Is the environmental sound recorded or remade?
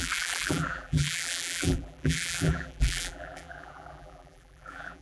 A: remade